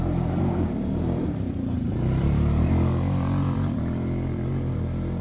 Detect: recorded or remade remade